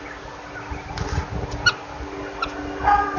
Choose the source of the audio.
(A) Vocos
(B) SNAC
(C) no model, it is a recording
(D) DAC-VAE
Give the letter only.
C